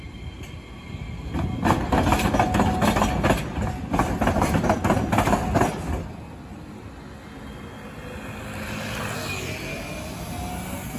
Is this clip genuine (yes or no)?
yes